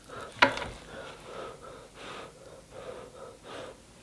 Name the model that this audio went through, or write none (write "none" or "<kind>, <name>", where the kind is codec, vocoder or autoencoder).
none